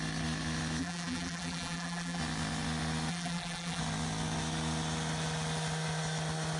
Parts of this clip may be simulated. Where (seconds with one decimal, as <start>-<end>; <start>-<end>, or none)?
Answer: 0.8-2.2; 3.1-3.8